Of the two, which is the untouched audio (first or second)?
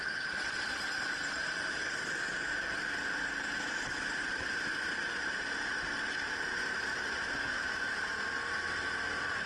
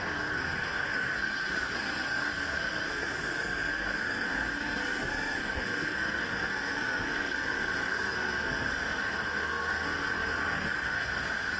first